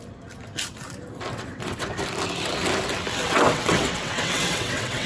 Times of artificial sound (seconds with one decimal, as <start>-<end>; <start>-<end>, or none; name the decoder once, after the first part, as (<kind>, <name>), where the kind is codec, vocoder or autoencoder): 1.3-2.0 (vocoder, WaveNeXt); 3.2-5.1